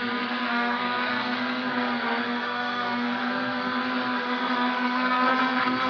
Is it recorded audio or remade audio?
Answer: remade